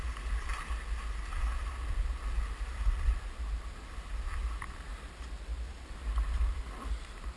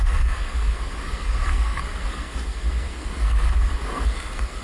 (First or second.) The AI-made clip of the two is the second